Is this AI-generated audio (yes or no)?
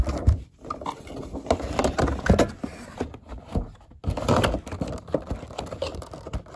no